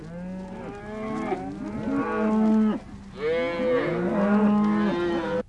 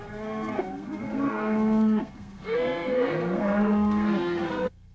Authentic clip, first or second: first